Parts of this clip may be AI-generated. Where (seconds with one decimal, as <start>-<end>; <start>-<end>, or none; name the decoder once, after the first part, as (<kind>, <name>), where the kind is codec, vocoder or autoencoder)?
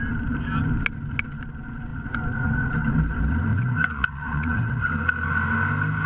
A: 3.5-4.7 (vocoder, Vocos)